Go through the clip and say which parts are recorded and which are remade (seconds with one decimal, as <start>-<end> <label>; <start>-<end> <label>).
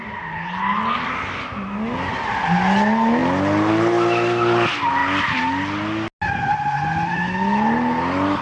0.0-8.4 recorded